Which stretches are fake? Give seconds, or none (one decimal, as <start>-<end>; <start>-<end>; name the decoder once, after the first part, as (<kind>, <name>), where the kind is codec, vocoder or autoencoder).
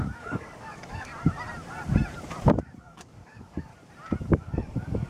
0.0-1.1 (codec, DAC); 2.8-3.7; 4.3-5.1